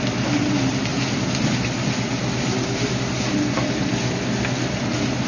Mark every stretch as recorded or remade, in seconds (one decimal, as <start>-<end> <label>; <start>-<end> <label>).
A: 0.0-5.3 recorded